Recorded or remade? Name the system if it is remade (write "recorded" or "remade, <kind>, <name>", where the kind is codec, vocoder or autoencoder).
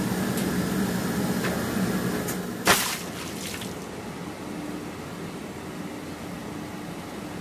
recorded